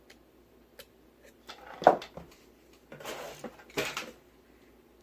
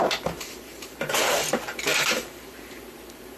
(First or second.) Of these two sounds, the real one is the first